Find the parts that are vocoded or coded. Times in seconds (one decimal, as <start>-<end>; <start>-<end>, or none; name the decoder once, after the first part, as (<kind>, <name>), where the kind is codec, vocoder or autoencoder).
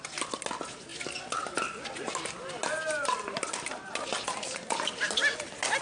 none